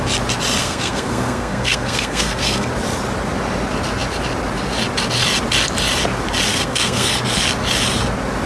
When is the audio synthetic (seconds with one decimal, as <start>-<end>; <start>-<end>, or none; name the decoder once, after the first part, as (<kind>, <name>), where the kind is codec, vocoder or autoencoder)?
0.6-2.7 (codec, SNAC); 6.5-7.1